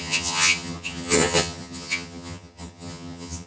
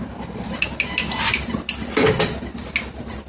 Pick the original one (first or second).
second